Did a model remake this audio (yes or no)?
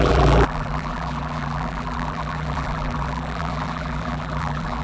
yes